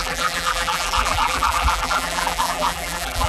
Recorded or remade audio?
remade